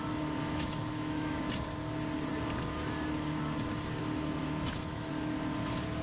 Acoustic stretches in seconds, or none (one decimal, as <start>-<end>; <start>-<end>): 0.0-0.4; 1.4-4.4; 5.1-6.0

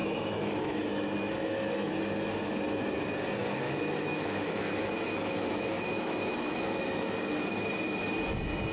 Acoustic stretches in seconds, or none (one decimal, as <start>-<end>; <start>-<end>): 1.9-3.4; 7.7-8.7

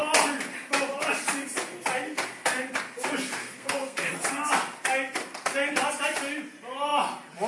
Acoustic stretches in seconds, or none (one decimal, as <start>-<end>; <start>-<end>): 0.0-3.4; 4.1-7.5